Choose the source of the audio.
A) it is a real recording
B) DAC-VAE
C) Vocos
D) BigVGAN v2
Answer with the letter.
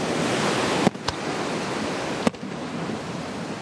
A